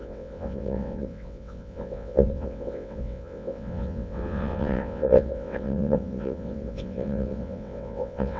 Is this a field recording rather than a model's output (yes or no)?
no